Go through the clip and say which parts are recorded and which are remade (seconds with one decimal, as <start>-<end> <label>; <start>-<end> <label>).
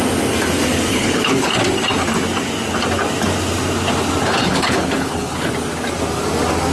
0.0-0.9 recorded; 0.9-1.5 remade; 1.5-4.4 recorded; 4.4-5.5 remade; 5.5-6.7 recorded